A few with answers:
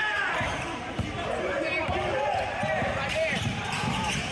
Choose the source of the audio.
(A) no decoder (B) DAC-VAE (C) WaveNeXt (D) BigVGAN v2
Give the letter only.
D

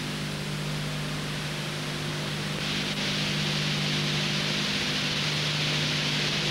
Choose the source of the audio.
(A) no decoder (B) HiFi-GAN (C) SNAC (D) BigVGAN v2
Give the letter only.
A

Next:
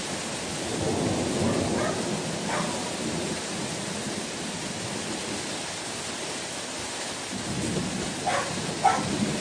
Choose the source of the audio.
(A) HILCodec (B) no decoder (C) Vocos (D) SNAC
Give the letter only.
B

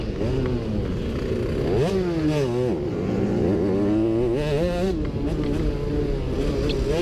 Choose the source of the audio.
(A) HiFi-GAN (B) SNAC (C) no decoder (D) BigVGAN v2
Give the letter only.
C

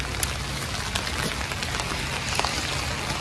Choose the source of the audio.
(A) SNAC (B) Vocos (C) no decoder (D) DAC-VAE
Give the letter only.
C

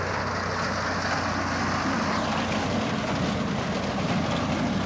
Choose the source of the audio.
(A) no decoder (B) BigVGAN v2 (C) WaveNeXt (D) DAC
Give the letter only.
A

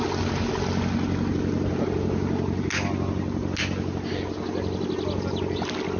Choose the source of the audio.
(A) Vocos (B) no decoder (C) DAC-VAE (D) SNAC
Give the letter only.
B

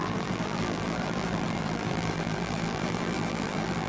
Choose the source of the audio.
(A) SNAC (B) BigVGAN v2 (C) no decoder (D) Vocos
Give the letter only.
B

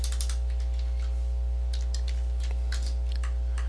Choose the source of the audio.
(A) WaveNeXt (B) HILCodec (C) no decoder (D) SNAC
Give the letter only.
C